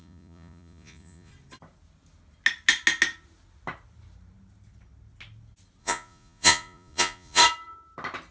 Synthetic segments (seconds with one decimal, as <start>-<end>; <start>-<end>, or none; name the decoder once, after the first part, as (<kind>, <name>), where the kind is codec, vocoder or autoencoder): 0.0-1.3 (vocoder, Vocos); 5.8-7.4